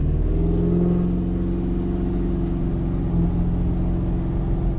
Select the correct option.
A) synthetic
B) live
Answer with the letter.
B